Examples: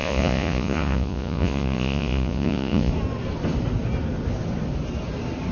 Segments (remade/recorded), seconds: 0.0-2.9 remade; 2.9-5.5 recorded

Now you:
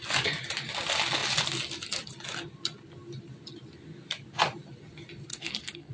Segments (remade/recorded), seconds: 0.0-5.3 recorded; 5.3-5.9 remade

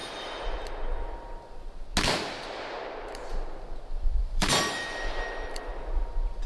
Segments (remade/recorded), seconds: 0.0-3.9 recorded; 3.9-5.7 remade; 5.7-6.5 recorded

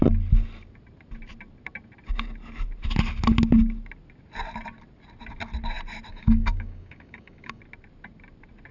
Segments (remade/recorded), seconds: 0.0-6.1 recorded; 6.1-7.6 remade; 7.6-8.7 recorded

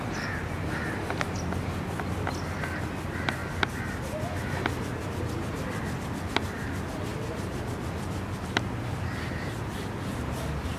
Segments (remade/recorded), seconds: 0.0-3.4 recorded; 3.4-4.0 remade; 4.0-7.1 recorded; 7.1-10.0 remade; 10.0-10.8 recorded

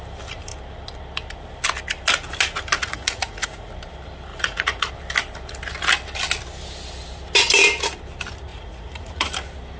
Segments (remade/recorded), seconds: 0.0-2.8 recorded; 2.8-3.7 remade; 3.7-4.3 recorded; 4.3-4.9 remade; 4.9-8.5 recorded; 8.5-9.3 remade; 9.3-9.8 recorded

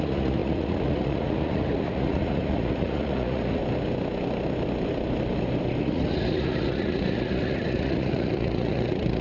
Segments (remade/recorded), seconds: 0.0-3.6 remade; 3.6-5.8 recorded; 5.8-9.2 remade